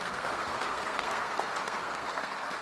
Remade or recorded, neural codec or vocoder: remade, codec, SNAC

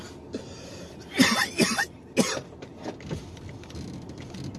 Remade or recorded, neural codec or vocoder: recorded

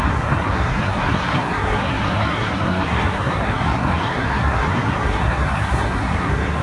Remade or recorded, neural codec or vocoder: remade, codec, SNAC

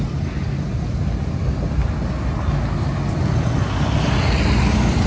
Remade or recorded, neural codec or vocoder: recorded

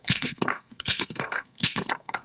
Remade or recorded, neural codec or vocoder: remade, codec, SNAC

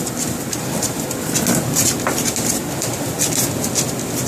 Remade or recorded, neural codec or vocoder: recorded